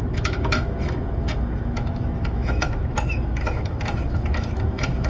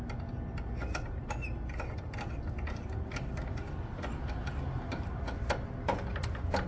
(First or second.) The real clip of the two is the second